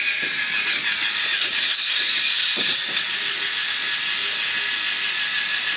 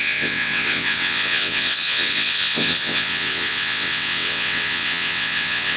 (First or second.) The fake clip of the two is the second